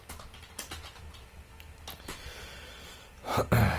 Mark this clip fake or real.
real